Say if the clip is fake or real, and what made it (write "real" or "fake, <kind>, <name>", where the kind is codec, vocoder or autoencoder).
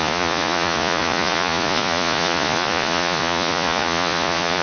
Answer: fake, vocoder, Vocos